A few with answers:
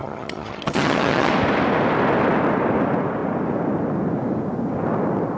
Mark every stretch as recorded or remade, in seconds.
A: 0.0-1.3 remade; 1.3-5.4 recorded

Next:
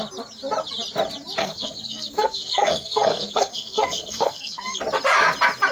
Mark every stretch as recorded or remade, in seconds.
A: 0.0-1.4 recorded; 1.4-4.8 remade; 4.8-5.7 recorded

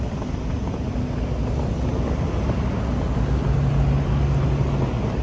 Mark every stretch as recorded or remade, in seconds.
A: 0.0-5.2 recorded

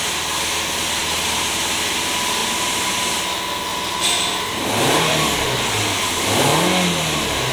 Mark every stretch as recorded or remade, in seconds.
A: 0.0-1.0 recorded; 1.0-1.6 remade; 1.6-2.4 recorded; 2.4-3.2 remade; 3.2-3.7 recorded; 3.7-5.1 remade; 5.1-7.5 recorded